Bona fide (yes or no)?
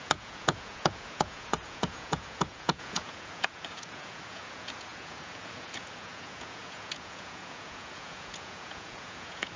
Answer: no